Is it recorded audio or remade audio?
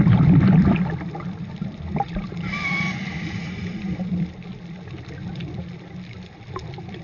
remade